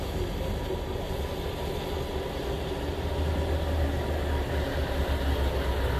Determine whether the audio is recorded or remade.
recorded